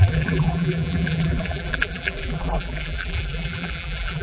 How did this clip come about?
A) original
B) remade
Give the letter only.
B